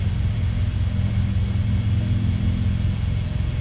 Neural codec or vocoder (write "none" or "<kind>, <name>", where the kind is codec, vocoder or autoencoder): none